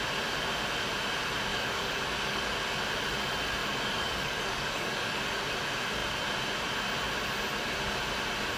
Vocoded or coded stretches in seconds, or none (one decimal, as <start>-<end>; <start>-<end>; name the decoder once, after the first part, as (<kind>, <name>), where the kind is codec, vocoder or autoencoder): 1.5-2.4 (codec, DAC); 3.6-5.2